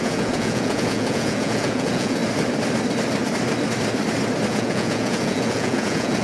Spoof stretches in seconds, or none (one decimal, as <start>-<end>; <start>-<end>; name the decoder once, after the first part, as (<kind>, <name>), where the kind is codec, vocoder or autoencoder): 0.0-2.2 (vocoder, Vocos); 4.5-6.2